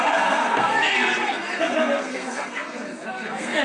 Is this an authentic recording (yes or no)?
no